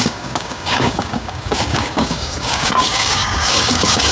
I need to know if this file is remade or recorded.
remade